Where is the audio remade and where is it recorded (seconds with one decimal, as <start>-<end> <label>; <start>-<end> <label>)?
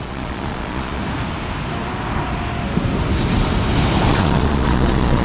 0.0-1.0 remade; 1.0-4.1 recorded; 4.1-5.2 remade